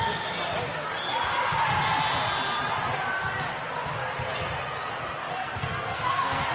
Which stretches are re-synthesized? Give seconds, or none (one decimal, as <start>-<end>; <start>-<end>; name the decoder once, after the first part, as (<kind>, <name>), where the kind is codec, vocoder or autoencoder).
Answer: 5.3-6.5 (codec, SNAC)